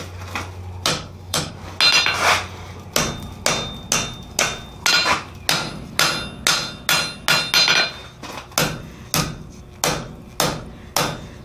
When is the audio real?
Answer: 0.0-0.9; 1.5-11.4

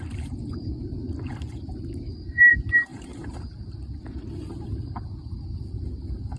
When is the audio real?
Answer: none

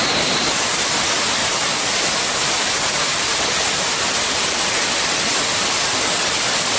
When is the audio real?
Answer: 0.0-1.4; 5.5-6.8

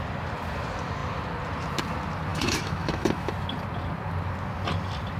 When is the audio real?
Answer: 0.0-2.3; 3.3-5.2

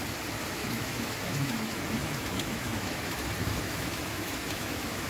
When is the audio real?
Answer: 0.0-0.6; 3.0-3.4

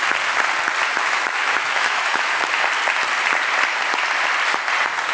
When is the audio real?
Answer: 0.0-1.0; 2.4-5.1